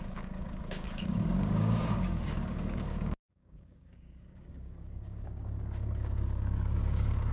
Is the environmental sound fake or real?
fake